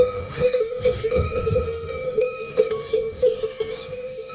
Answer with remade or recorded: remade